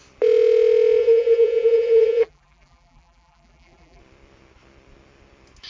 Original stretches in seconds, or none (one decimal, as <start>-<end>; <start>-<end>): 0.0-1.0; 4.0-5.7